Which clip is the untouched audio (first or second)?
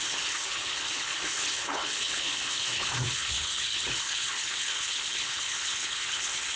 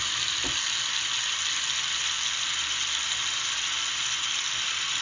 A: second